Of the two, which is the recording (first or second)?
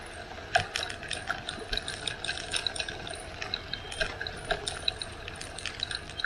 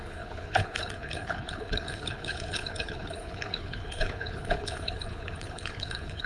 first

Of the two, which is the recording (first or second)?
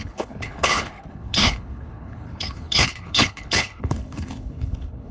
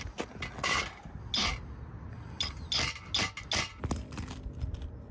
second